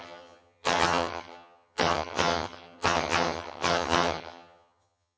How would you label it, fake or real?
fake